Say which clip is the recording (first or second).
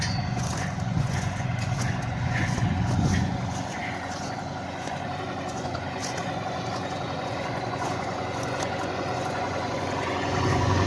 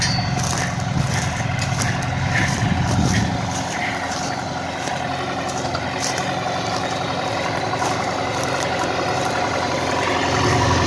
second